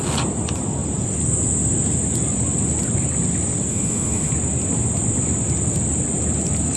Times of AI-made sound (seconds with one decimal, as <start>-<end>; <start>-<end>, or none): 3.7-4.3

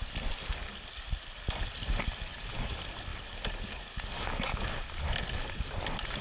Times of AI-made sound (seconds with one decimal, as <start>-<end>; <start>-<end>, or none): none

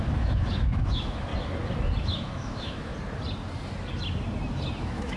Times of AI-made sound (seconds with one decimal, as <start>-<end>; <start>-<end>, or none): 0.0-1.3; 2.0-2.9; 4.8-5.2

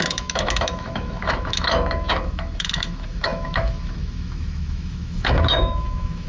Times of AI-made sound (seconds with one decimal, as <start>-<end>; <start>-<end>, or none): 0.0-6.3

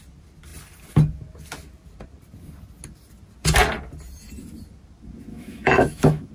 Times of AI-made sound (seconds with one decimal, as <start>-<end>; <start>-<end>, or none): 5.3-6.3

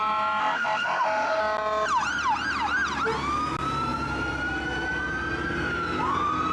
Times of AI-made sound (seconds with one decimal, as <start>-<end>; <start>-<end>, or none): 0.4-1.4

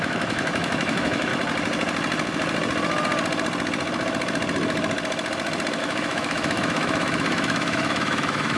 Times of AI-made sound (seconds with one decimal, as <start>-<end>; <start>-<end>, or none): 0.0-1.3; 5.8-8.6